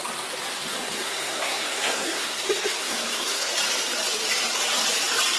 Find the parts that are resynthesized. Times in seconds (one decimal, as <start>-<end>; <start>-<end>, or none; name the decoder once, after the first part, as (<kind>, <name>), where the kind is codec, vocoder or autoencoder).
0.7-3.5 (codec, SNAC)